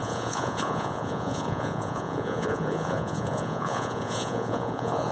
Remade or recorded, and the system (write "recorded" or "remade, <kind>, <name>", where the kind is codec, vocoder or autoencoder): remade, vocoder, Vocos